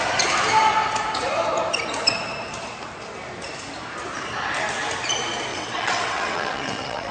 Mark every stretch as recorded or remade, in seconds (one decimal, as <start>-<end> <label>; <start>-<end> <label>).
0.0-5.5 recorded; 5.5-7.1 remade

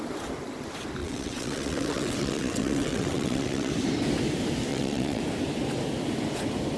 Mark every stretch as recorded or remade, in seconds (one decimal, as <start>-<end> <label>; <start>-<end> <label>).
0.0-1.0 recorded; 1.0-3.7 remade; 3.7-4.7 recorded; 4.7-5.2 remade; 5.2-6.8 recorded

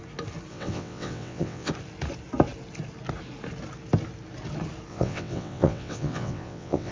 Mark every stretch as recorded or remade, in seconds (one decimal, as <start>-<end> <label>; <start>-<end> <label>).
0.0-0.5 recorded; 0.5-1.7 remade; 1.7-4.9 recorded; 4.9-6.9 remade